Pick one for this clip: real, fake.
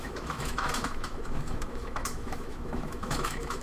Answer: fake